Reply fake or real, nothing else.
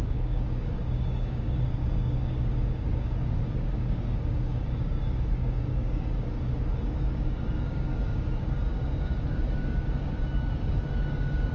fake